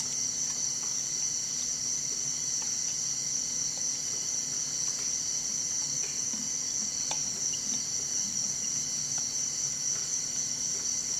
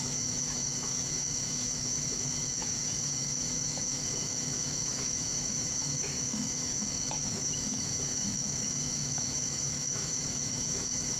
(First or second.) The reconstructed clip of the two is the second